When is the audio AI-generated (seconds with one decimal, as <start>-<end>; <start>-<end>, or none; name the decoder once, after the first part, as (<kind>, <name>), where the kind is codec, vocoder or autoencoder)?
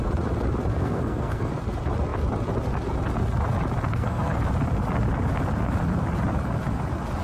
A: 0.7-1.5 (codec, SNAC); 3.9-4.4